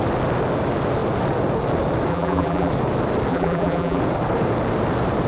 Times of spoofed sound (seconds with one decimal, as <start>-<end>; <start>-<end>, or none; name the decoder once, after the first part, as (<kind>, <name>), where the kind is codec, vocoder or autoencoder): 2.1-2.7 (vocoder, BigVGAN v2); 3.3-4.0